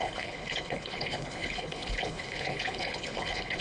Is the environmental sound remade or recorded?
remade